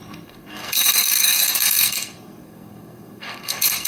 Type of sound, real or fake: fake